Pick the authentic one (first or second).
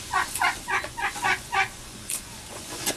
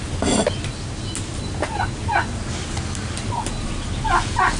second